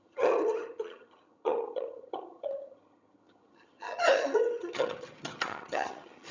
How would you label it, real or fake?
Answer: fake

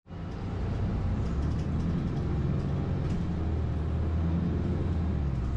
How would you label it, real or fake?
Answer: real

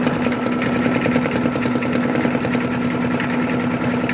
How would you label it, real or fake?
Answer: real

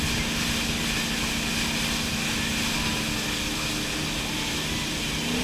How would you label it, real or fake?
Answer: real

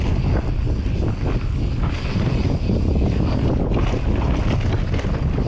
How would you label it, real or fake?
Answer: real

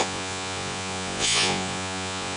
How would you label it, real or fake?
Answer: fake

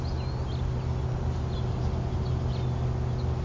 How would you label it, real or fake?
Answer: real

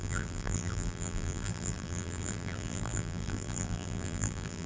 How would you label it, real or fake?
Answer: fake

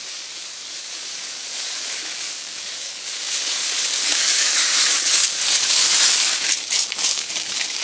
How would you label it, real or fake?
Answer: fake